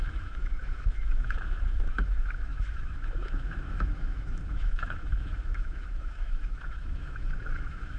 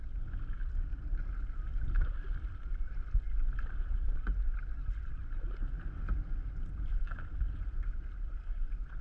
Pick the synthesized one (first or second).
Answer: first